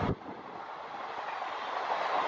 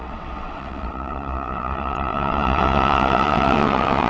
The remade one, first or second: second